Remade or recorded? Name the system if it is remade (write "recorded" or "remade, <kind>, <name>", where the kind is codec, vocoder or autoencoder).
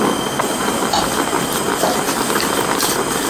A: recorded